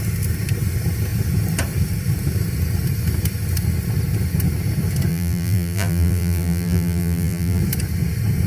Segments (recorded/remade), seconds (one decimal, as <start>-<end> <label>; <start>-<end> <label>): 0.0-5.1 recorded; 5.1-7.6 remade; 7.6-8.5 recorded